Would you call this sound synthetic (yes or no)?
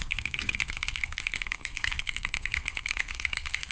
yes